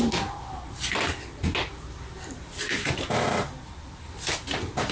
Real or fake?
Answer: real